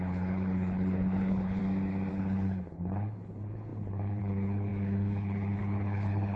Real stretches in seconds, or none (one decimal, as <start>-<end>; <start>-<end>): 1.6-2.1